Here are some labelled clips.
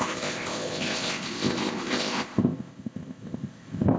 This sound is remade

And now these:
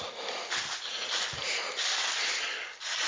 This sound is recorded